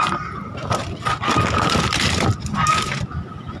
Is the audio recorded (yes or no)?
yes